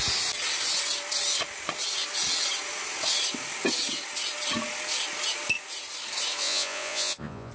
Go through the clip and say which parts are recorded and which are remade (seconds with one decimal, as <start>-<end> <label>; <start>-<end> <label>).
0.0-6.4 recorded; 6.4-7.5 remade